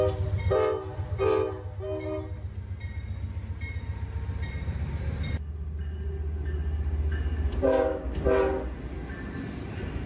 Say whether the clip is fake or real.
real